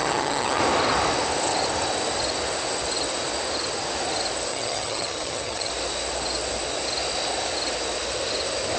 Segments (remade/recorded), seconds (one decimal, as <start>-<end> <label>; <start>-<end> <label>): 0.0-0.6 remade; 0.6-4.5 recorded; 4.5-5.7 remade; 5.7-8.8 recorded